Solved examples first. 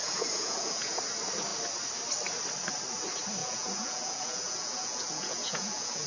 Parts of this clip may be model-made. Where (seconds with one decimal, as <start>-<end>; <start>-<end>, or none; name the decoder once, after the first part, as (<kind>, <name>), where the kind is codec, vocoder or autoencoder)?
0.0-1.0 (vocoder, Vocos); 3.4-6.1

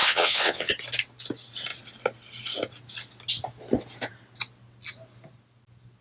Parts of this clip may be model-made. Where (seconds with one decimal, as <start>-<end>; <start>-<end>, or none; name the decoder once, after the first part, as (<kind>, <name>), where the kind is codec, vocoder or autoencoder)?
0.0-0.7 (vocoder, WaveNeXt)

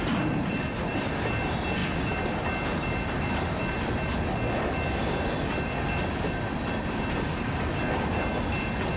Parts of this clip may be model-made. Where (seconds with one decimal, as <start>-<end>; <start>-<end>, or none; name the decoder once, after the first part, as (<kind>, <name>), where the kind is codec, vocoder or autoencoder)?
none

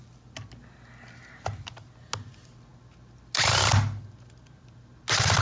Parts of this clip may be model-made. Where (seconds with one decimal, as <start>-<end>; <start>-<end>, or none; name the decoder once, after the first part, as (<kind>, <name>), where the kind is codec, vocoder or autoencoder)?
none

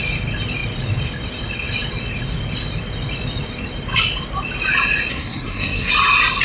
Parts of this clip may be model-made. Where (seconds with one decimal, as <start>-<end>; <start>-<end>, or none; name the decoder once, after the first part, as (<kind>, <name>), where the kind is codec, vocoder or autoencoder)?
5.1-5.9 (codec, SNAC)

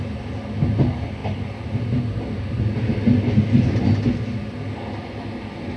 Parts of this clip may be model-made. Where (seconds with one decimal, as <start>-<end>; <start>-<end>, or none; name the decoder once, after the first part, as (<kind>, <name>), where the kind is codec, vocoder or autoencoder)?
none